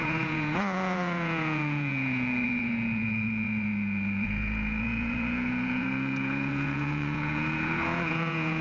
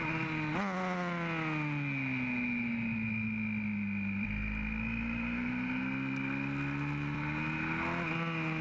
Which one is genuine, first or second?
second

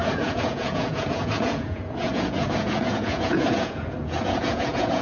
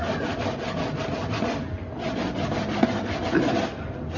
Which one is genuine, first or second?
second